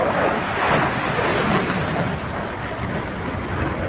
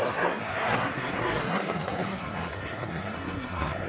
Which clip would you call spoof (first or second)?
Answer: second